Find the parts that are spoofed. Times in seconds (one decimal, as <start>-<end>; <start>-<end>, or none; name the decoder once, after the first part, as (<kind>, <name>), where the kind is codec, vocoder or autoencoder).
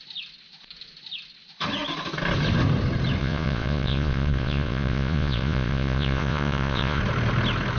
3.2-7.0 (vocoder, Vocos)